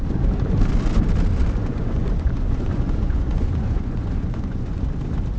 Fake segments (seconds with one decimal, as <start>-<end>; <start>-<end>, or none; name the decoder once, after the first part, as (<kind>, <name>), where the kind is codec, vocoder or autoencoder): 1.6-4.8 (vocoder, Vocos)